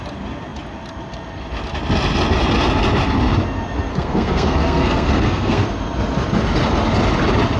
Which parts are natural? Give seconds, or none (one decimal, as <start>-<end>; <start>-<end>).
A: 0.0-3.9; 5.6-7.6